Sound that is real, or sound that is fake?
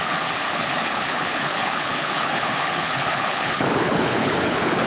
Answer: fake